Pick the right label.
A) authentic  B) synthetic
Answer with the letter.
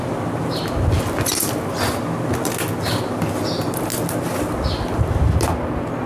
A